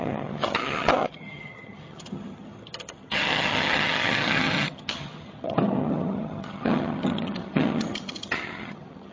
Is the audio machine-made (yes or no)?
yes